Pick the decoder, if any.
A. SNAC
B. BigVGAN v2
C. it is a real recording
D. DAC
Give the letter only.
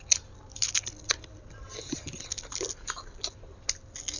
C